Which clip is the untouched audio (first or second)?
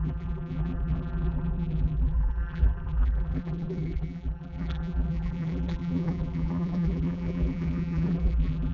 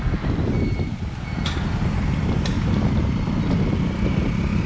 second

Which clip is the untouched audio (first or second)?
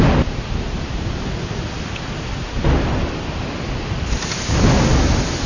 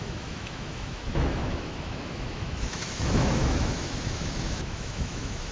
first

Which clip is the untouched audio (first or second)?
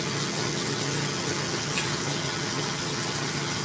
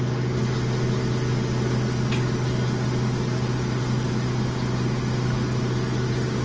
second